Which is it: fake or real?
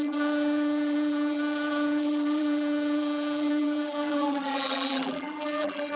fake